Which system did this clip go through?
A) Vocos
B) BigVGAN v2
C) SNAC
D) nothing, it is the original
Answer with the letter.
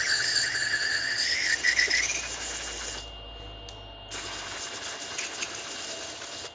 D